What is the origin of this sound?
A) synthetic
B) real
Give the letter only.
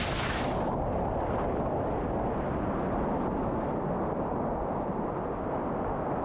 B